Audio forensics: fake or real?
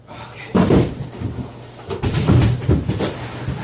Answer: real